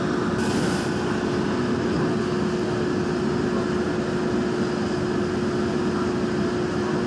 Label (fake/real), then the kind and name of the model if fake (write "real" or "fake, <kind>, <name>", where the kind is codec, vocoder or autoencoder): real